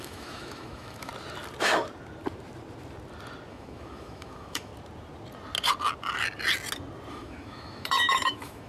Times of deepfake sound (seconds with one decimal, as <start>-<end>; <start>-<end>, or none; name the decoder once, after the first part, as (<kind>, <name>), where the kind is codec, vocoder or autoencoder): 0.0-1.1 (autoencoder, DAC-VAE); 3.5-4.7; 7.1-8.7